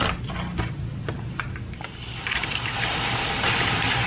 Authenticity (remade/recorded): recorded